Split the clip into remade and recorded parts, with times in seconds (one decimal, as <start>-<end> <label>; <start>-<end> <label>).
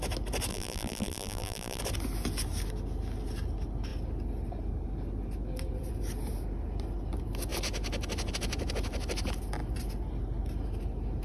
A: 0.0-0.5 recorded; 0.5-1.8 remade; 1.8-11.2 recorded